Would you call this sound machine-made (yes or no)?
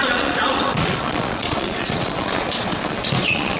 yes